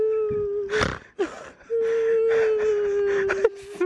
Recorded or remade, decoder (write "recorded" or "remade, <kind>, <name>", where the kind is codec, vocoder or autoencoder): recorded